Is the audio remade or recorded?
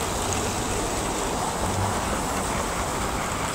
recorded